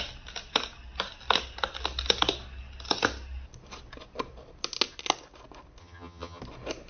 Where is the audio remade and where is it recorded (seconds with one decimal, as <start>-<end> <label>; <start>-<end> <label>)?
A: 0.0-5.8 recorded; 5.8-6.4 remade; 6.4-6.9 recorded